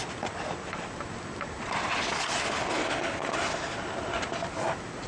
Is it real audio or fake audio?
real